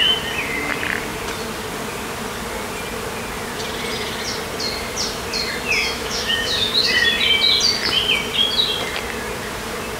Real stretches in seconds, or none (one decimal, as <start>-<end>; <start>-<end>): 0.0-5.8; 6.9-10.0